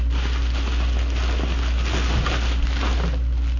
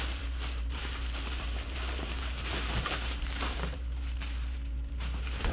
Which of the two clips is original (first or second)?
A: first